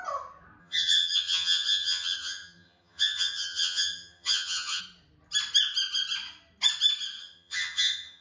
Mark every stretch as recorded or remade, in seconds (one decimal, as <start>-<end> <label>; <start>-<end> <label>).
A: 0.0-0.6 recorded; 0.6-4.8 remade; 4.8-7.2 recorded; 7.2-8.2 remade